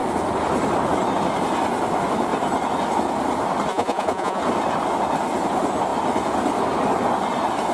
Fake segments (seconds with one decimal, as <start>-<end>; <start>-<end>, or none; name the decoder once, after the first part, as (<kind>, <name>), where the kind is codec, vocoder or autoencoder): 3.7-4.4 (vocoder, Vocos)